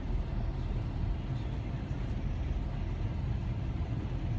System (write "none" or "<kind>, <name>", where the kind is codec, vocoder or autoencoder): none